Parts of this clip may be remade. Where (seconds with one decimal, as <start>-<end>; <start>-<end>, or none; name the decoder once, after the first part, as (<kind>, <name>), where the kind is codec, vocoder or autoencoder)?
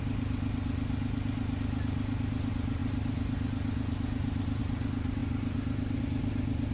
none